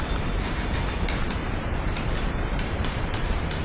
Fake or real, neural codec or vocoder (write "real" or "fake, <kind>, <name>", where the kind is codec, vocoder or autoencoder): fake, vocoder, BigVGAN v2